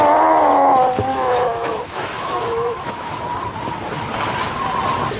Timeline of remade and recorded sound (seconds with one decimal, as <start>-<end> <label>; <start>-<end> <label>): 0.0-1.1 recorded; 1.1-3.1 remade; 3.1-5.2 recorded